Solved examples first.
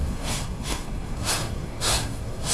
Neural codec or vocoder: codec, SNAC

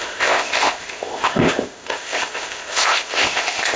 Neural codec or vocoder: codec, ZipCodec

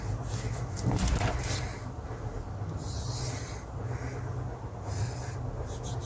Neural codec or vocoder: none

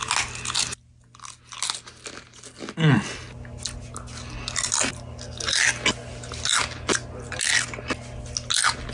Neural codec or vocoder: none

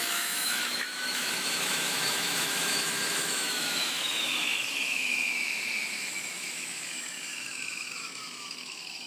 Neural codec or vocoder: autoencoder, DAC-VAE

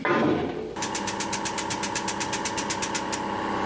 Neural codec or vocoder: none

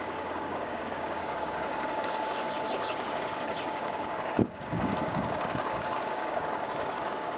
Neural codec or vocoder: codec, DAC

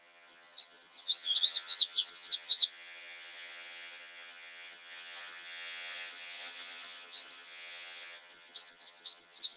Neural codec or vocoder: vocoder, HiFi-GAN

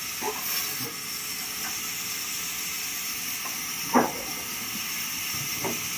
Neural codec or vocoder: none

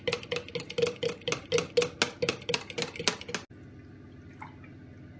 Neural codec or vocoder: none